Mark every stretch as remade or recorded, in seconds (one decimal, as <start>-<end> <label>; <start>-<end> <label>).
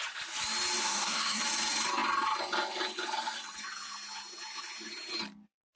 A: 0.0-0.8 recorded; 0.8-1.4 remade; 1.4-5.8 recorded